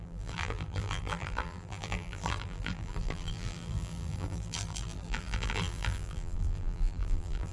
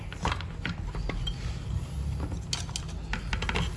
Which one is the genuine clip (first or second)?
second